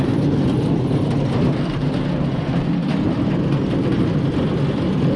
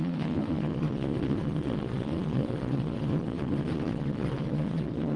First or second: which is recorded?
first